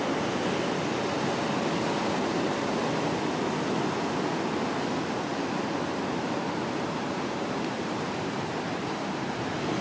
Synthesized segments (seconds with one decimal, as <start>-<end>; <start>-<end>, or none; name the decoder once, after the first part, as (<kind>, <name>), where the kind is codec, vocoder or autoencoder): 5.3-8.5 (vocoder, BigVGAN v2)